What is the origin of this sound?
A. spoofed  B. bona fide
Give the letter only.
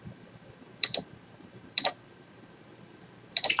A